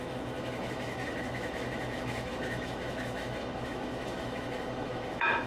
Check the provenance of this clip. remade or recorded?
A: remade